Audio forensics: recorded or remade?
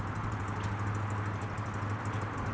recorded